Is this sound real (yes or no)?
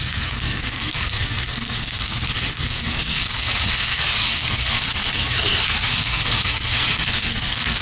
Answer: no